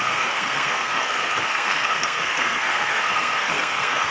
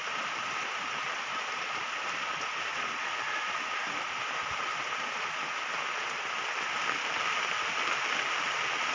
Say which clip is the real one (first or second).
second